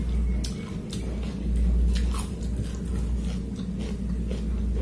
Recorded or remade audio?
recorded